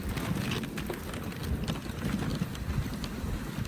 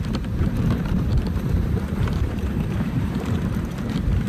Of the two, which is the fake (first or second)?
second